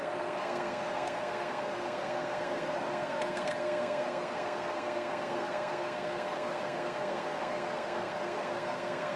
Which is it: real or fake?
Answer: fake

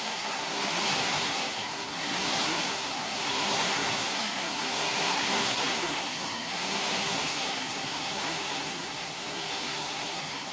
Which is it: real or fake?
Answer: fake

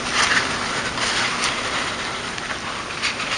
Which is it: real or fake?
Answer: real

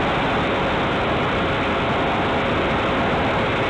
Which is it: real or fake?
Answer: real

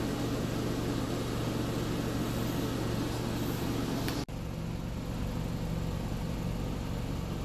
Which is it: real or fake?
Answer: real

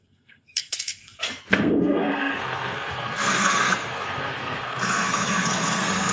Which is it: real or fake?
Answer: fake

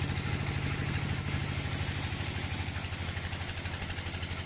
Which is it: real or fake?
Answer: real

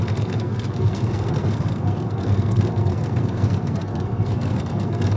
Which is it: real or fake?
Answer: fake